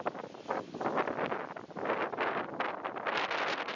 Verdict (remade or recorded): recorded